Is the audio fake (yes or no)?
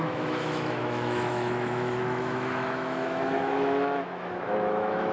yes